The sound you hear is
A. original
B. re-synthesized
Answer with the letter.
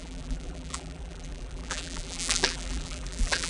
B